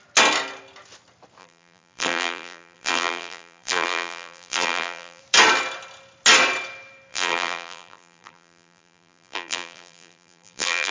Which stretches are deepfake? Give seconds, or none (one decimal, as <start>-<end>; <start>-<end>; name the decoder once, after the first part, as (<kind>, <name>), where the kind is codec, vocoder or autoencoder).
1.4-5.2 (vocoder, BigVGAN v2); 7.1-10.9